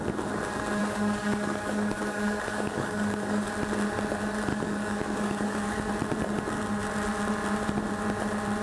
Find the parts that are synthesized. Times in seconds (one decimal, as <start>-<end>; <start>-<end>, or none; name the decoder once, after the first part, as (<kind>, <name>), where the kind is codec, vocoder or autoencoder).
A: 0.8-3.5 (codec, DAC); 4.5-5.9